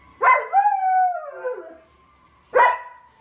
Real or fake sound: real